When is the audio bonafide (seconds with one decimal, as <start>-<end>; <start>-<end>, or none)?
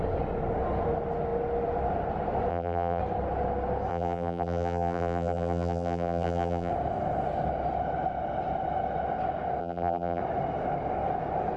0.0-2.5; 3.0-3.9; 6.7-9.6; 10.2-11.6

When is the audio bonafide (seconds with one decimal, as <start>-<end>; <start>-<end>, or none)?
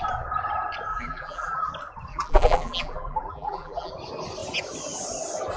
0.0-0.9; 1.7-2.1; 3.9-5.6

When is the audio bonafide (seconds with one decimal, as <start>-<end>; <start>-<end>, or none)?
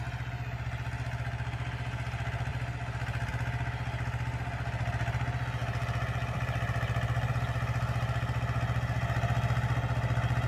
0.0-5.6; 7.3-10.5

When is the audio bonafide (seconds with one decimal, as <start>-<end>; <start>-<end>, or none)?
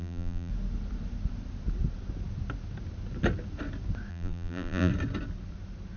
0.5-4.1; 4.9-6.0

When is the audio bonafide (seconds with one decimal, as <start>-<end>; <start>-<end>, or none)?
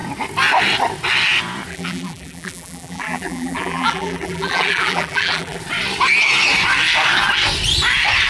0.0-1.7; 5.6-8.3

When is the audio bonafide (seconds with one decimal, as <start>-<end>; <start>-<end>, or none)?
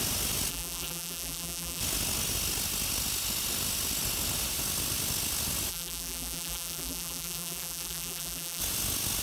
0.0-0.5; 1.8-5.7; 8.6-9.2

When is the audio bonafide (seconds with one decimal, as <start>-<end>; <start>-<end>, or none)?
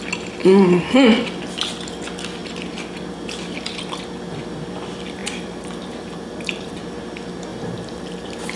0.0-5.2; 6.8-7.5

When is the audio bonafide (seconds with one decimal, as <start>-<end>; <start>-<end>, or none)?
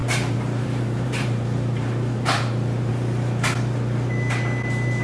2.9-5.0